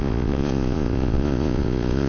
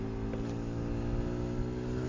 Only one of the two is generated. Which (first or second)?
first